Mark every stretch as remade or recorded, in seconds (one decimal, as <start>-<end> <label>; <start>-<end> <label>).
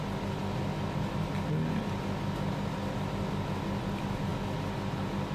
0.0-5.3 recorded